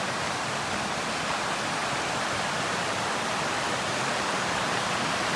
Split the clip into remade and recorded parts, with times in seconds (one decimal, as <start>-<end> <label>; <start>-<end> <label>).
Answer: 0.0-1.8 recorded; 1.8-5.0 remade; 5.0-5.4 recorded